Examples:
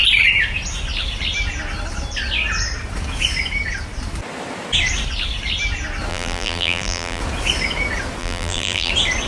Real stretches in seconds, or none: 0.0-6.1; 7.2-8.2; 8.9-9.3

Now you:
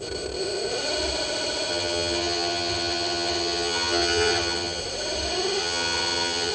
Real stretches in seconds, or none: 0.0-1.7; 4.8-5.6

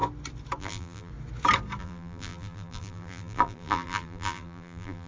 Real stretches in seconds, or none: 0.0-0.6; 1.1-1.8

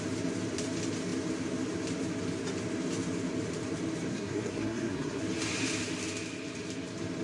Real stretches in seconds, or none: 0.0-4.1; 5.2-7.2

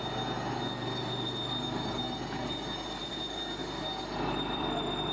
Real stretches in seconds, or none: 0.0-3.6

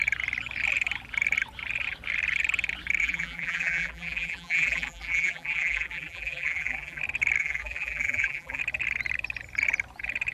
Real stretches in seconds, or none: 0.0-3.0; 7.0-7.4; 8.6-10.3

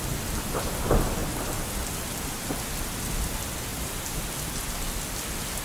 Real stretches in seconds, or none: 0.0-1.2; 1.7-3.7; 4.3-5.6

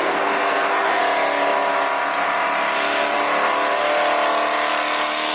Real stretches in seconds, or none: 1.0-5.3